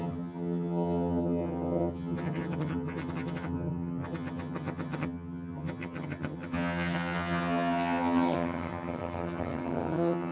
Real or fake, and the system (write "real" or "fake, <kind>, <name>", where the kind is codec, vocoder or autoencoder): fake, vocoder, HiFi-GAN